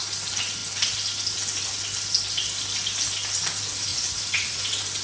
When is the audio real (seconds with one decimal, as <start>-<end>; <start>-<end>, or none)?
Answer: 0.0-3.9; 4.6-5.0